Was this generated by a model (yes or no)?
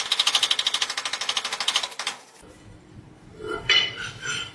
no